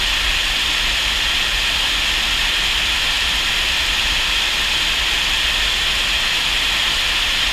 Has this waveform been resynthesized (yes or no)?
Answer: no